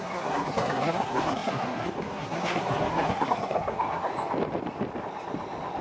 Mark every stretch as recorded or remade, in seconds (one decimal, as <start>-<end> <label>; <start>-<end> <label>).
0.0-4.1 remade; 4.1-5.8 recorded

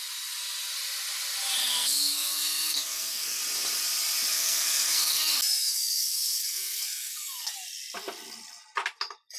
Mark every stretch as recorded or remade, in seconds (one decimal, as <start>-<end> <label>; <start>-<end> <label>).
0.0-1.6 recorded; 1.6-3.4 remade; 3.4-4.3 recorded; 4.3-7.5 remade; 7.5-9.4 recorded